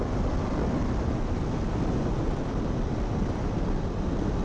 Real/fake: real